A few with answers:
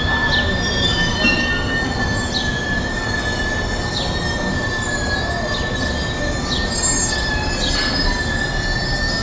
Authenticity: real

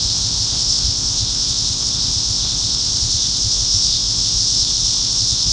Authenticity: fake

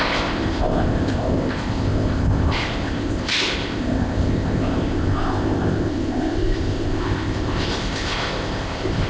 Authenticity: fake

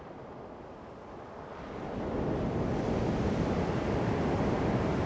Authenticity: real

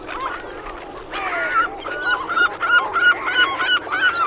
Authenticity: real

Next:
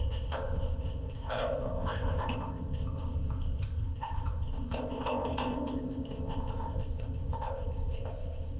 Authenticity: fake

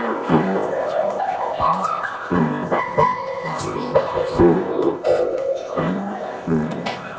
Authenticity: fake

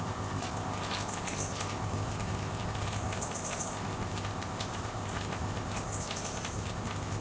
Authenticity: fake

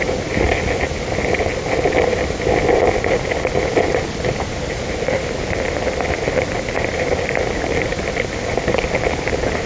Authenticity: real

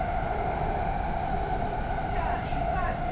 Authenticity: real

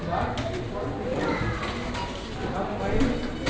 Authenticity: real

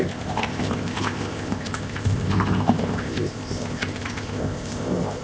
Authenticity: fake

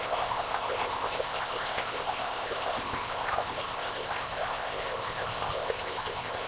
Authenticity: fake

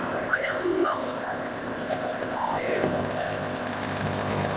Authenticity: fake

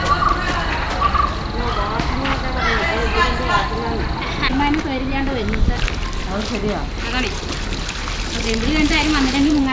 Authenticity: real